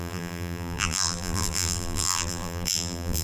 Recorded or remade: remade